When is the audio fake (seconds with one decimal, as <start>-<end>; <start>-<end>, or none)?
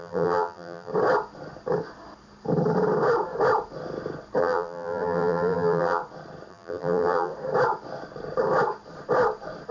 0.0-0.9; 4.4-6.0; 6.5-7.3